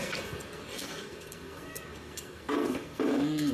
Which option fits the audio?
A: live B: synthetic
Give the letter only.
B